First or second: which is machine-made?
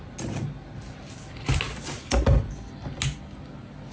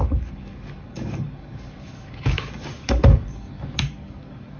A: second